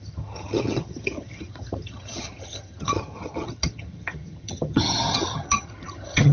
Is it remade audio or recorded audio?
remade